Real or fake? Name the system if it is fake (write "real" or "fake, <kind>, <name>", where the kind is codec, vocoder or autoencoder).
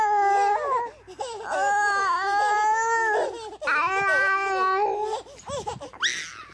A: real